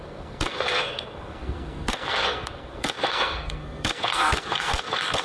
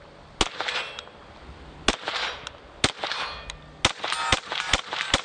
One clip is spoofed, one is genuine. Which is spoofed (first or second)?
first